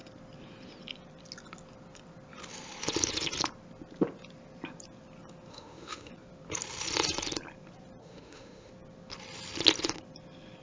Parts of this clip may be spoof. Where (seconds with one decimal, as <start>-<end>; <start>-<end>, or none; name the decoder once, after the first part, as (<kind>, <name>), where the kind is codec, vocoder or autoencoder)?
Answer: 5.5-6.1 (autoencoder, DAC-VAE); 8.0-8.7